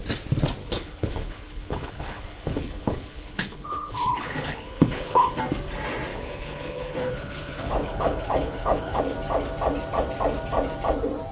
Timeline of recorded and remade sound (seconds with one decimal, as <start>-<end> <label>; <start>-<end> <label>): 0.0-0.6 recorded; 0.6-5.4 remade; 5.4-6.1 recorded; 6.1-9.0 remade; 9.0-11.3 recorded